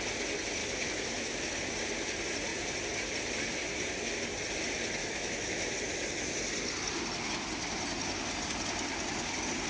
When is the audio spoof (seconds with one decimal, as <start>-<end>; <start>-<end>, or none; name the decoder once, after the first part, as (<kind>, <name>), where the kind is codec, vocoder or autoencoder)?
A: 0.6-1.5 (autoencoder, DAC-VAE); 5.0-5.7